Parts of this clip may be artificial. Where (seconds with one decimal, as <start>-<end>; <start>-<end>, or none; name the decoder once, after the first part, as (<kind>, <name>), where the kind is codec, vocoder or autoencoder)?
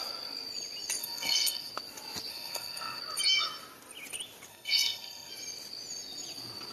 1.0-1.7 (codec, SNAC); 2.3-3.0; 4.5-5.3